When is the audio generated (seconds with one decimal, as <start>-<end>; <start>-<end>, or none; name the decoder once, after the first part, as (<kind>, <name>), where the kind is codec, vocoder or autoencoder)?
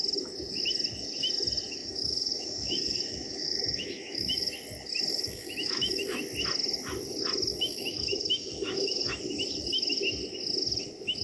1.8-4.5 (autoencoder, DAC-VAE); 5.1-6.2; 7.5-9.2